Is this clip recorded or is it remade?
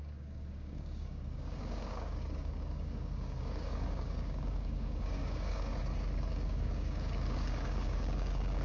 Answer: remade